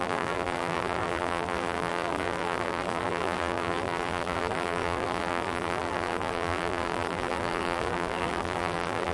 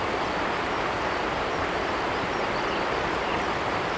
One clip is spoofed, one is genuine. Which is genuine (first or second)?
second